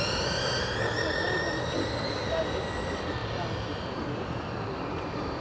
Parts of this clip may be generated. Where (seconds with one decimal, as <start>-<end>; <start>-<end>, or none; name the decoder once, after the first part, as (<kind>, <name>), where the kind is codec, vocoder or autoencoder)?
none